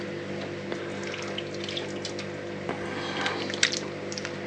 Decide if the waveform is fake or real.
real